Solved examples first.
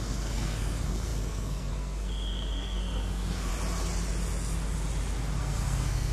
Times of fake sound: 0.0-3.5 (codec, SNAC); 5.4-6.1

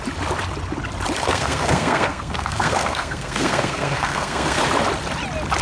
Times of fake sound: 1.2-4.6 (codec, SNAC)